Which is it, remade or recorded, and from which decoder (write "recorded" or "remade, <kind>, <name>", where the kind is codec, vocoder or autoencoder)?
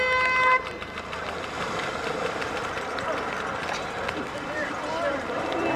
recorded